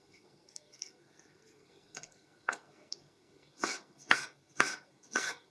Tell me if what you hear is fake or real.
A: fake